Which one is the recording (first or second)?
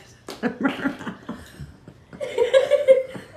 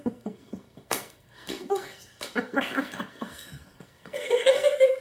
first